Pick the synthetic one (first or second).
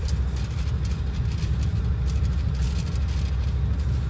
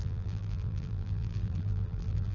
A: second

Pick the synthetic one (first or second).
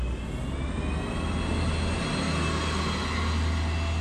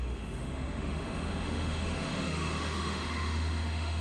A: second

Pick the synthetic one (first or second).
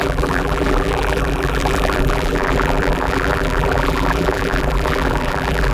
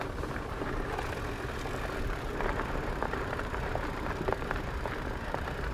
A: first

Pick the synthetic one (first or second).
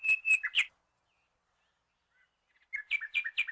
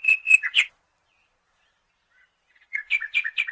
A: second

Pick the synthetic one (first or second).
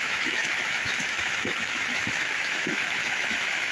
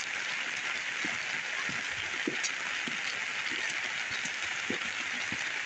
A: first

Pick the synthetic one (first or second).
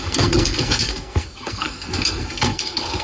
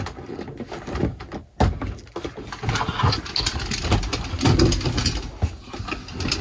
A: first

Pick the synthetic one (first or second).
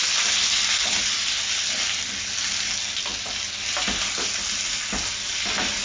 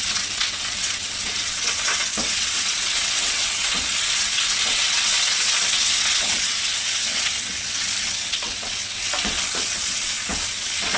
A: second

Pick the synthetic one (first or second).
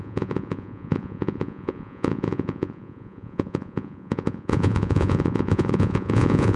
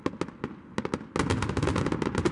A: first